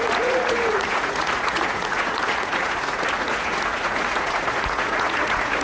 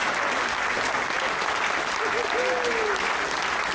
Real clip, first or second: second